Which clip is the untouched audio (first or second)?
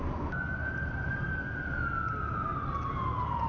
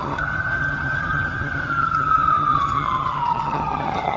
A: first